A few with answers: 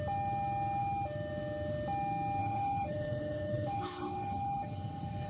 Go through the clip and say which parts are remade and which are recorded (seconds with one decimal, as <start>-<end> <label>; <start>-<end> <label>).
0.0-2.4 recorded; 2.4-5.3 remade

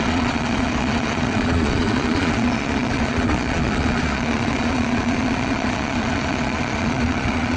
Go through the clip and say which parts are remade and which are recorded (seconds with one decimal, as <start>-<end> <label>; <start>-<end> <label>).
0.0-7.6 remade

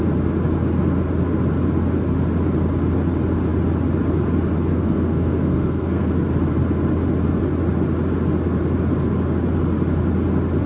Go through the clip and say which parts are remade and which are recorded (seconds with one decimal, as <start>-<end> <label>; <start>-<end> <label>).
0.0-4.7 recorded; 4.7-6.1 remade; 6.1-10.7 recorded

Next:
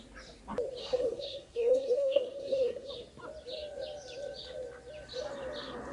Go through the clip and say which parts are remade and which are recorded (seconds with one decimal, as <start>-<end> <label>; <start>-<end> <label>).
0.0-0.8 recorded; 0.8-2.9 remade; 2.9-5.9 recorded

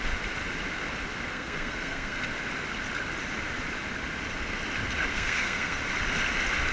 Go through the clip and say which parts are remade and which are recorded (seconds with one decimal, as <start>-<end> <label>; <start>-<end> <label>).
0.0-1.3 recorded; 1.3-2.2 remade; 2.2-5.1 recorded; 5.1-5.8 remade; 5.8-6.7 recorded

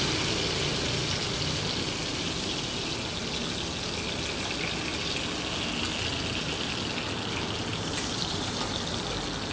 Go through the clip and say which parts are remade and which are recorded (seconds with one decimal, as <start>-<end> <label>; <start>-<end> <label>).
0.0-7.7 recorded; 7.7-8.8 remade; 8.8-9.5 recorded